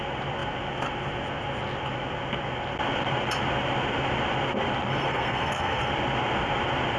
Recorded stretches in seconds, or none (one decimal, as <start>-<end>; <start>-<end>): 0.0-4.9; 5.9-7.0